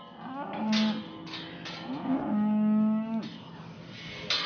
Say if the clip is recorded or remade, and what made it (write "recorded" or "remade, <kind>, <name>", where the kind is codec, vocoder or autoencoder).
recorded